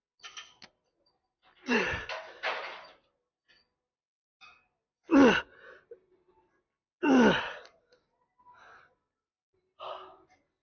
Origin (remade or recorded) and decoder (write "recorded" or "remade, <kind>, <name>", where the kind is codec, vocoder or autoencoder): recorded